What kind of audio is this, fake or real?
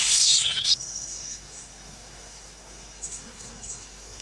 fake